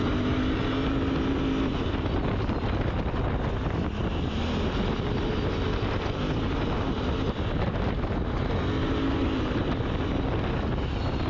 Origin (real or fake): real